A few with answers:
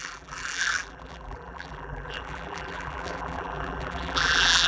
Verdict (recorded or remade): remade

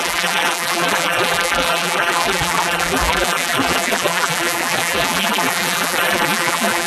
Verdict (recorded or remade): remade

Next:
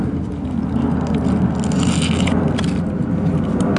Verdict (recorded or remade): recorded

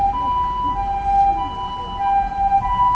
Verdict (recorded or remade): recorded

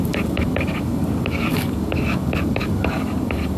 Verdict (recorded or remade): remade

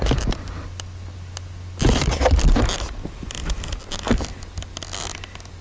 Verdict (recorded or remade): recorded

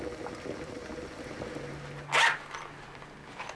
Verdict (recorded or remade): recorded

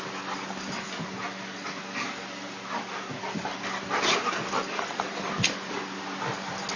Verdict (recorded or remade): recorded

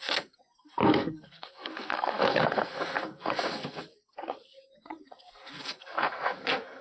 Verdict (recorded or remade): remade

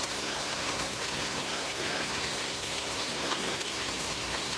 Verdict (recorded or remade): remade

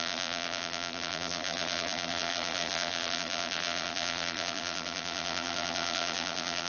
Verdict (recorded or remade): remade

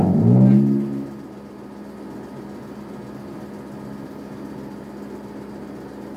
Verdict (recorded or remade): recorded